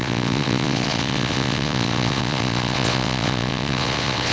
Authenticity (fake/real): fake